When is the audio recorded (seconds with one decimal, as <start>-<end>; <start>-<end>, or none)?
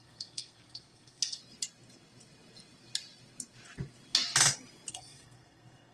1.4-4.9